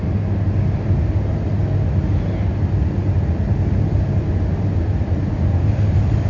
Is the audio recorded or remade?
recorded